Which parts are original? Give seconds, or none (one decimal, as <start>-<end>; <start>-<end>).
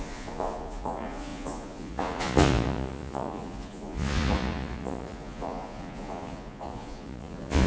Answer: none